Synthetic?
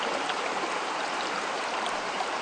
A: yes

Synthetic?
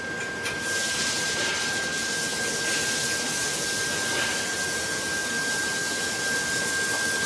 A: no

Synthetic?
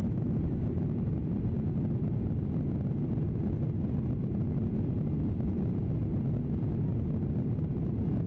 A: no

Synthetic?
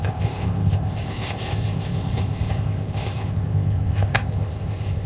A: yes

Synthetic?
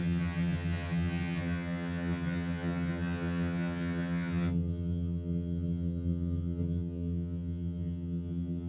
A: yes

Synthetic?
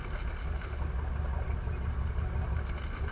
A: no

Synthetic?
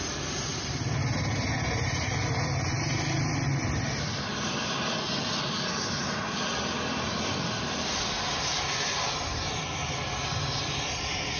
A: no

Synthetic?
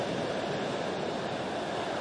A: no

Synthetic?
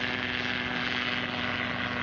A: no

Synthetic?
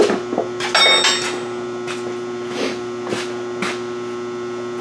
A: no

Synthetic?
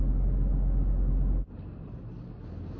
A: no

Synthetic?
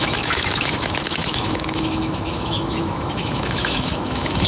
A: yes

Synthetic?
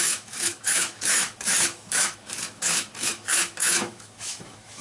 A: yes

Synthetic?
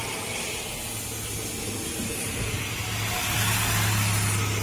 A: no